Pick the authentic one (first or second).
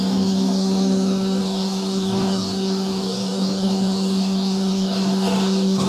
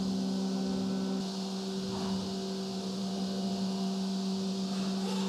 second